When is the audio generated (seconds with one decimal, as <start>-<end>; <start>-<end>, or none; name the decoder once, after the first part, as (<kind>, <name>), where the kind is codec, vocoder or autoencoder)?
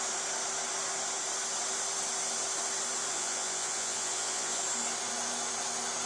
3.1-4.6 (vocoder, Vocos)